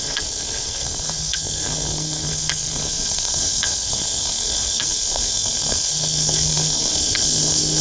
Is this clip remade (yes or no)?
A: yes